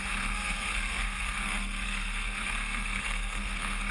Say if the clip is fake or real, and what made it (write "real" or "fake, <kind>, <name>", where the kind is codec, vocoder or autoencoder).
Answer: fake, codec, SNAC